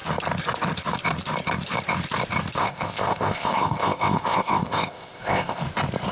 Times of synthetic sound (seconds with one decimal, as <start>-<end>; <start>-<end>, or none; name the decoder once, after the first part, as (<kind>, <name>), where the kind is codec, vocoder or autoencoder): 2.6-5.6 (codec, ZipCodec)